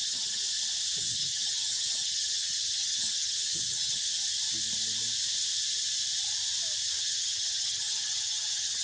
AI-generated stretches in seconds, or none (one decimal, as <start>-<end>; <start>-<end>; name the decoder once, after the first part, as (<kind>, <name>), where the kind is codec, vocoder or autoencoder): 0.0-0.4 (vocoder, HiFi-GAN); 1.0-4.2; 7.0-8.8